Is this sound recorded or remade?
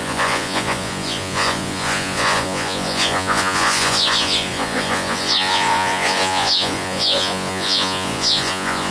remade